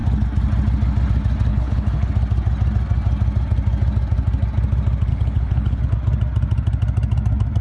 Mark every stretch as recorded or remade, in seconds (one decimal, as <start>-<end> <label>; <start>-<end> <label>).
0.0-1.5 recorded; 1.5-2.1 remade; 2.1-5.1 recorded; 5.1-5.8 remade; 5.8-7.6 recorded